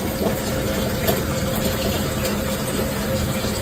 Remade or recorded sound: recorded